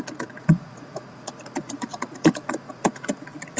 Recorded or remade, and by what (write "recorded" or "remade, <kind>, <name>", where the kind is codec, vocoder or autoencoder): remade, vocoder, Vocos